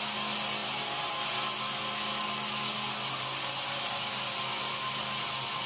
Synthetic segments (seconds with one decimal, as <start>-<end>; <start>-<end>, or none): none